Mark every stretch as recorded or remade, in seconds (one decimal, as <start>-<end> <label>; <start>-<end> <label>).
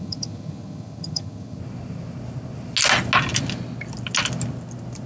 0.0-1.6 remade; 1.6-5.1 recorded